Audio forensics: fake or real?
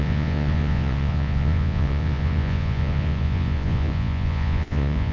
fake